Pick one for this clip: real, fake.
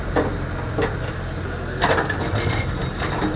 real